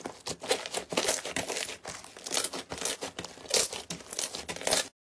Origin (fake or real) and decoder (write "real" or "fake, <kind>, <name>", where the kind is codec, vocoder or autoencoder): real